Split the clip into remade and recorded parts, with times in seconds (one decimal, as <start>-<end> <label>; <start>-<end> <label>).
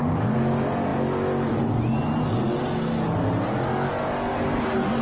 0.0-5.0 recorded